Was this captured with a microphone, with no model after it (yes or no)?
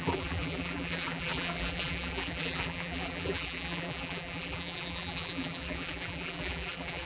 no